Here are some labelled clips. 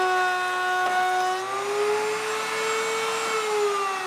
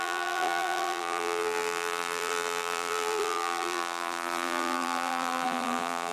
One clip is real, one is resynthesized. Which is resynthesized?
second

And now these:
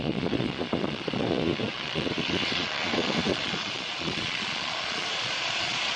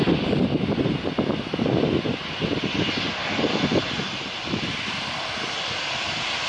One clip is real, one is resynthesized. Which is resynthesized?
first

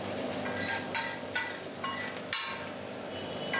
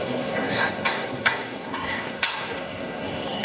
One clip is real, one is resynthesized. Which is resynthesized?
second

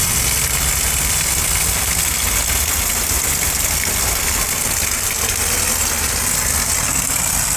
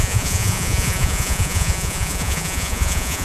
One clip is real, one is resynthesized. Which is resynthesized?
second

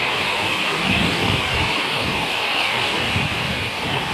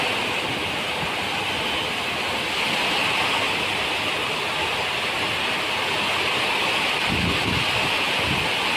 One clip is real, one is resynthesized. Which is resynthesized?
first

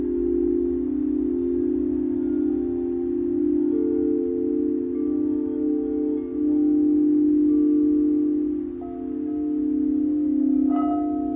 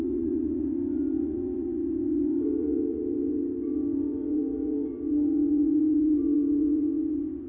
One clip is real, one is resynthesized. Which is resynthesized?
second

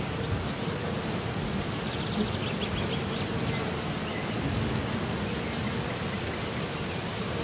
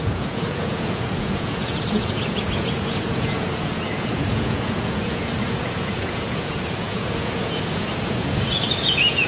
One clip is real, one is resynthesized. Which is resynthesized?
second